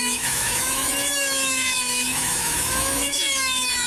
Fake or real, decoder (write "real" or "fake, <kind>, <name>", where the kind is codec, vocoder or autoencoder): fake, autoencoder, DAC-VAE